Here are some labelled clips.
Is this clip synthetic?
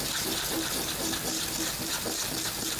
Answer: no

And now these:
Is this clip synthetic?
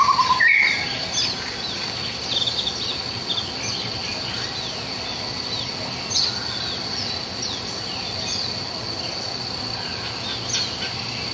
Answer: no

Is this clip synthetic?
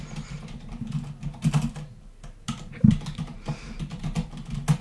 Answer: no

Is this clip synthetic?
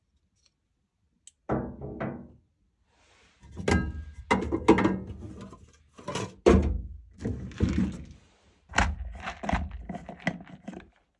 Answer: no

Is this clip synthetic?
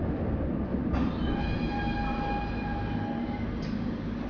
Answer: no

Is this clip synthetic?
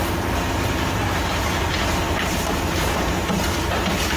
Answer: no